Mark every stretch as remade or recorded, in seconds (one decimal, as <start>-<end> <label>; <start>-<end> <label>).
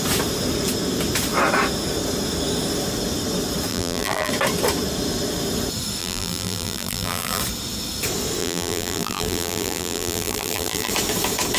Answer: 0.0-3.7 recorded; 3.7-4.3 remade; 4.3-6.0 recorded; 6.0-7.4 remade; 7.4-8.4 recorded; 8.4-10.9 remade; 10.9-11.6 recorded